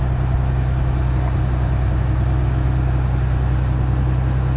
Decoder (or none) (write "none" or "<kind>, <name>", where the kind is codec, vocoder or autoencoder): none